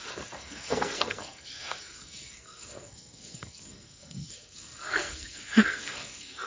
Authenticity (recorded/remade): remade